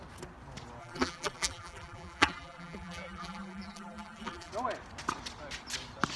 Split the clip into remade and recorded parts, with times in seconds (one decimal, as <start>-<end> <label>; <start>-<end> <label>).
0.0-0.8 recorded; 0.8-4.5 remade; 4.5-6.2 recorded